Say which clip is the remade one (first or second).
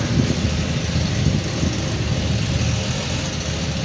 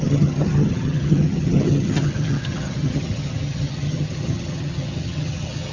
second